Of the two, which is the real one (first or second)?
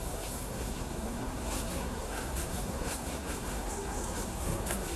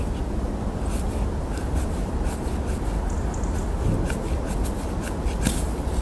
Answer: second